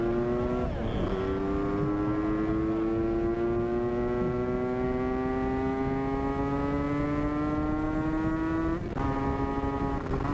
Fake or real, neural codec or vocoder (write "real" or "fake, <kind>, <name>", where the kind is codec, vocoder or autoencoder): real